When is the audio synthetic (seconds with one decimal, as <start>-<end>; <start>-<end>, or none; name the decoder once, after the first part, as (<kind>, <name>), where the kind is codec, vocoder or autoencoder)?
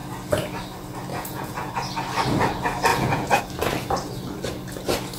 1.1-1.7 (vocoder, Vocos); 2.9-3.4